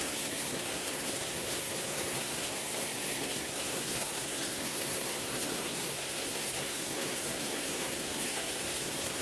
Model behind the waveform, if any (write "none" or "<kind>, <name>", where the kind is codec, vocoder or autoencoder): codec, SNAC